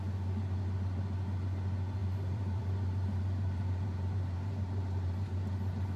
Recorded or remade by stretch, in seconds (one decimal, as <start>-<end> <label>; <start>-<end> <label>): 0.0-2.0 recorded; 2.0-5.2 remade; 5.2-6.0 recorded